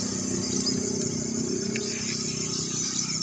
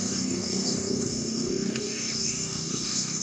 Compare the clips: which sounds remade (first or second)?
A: second